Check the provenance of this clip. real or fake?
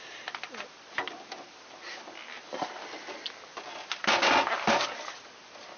real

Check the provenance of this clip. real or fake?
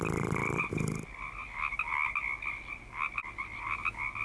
real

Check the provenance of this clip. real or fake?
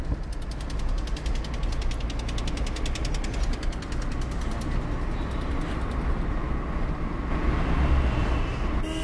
real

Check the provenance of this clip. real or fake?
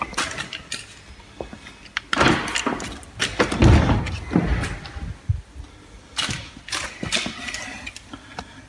real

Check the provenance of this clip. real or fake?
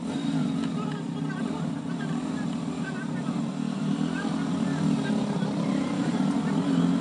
real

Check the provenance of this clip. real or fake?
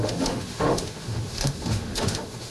fake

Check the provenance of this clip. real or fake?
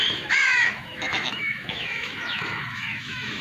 fake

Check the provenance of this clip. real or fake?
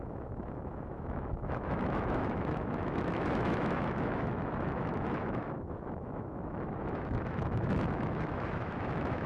fake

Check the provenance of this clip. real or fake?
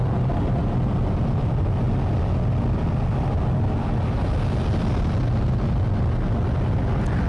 real